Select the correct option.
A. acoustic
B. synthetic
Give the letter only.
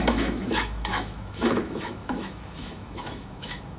B